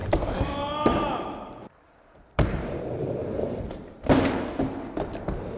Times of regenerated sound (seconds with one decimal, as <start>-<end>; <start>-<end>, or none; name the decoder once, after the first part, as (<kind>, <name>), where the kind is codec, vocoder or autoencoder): 0.0-2.8 (vocoder, BigVGAN v2); 3.2-4.6